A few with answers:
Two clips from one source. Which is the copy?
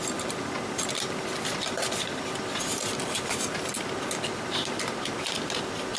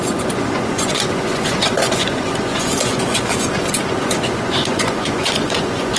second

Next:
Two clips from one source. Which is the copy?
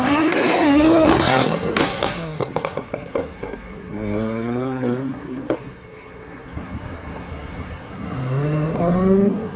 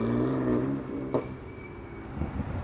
first